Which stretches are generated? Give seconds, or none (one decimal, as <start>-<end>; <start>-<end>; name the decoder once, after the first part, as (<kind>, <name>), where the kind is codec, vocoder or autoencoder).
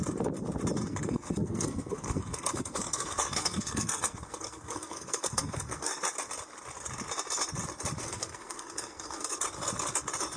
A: 0.9-6.0 (codec, SNAC); 8.0-9.4